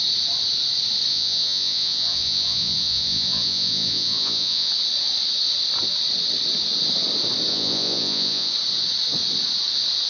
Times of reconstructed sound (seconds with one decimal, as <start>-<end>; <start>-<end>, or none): 1.1-4.7; 7.5-8.5